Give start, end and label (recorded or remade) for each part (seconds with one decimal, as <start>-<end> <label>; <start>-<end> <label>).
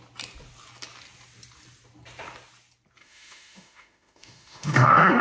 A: 0.0-3.0 recorded; 3.0-5.2 remade